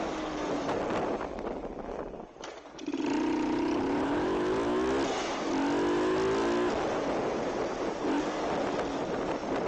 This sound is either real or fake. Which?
real